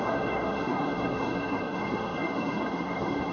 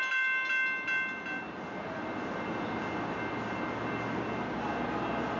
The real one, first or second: second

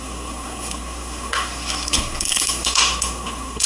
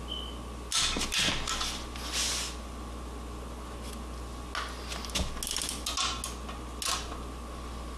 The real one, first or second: second